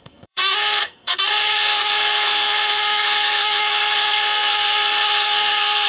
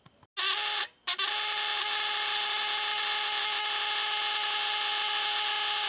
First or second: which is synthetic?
first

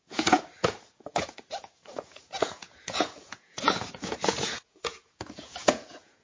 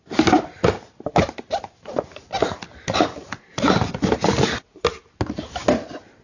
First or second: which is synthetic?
first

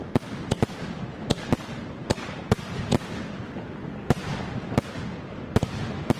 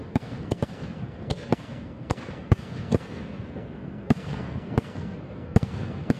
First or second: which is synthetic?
second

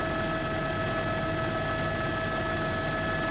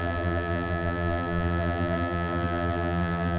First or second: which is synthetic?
second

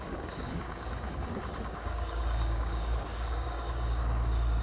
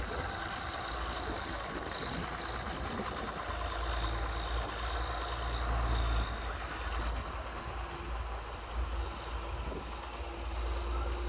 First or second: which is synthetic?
first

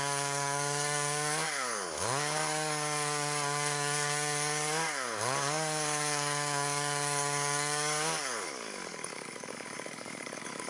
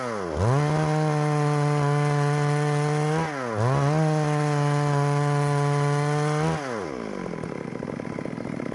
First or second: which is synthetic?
first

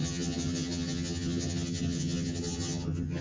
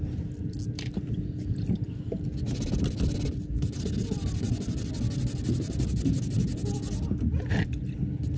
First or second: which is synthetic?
first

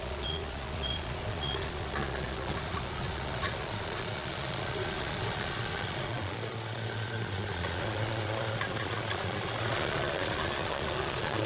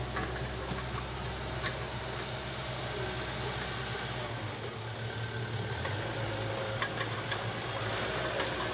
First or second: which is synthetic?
first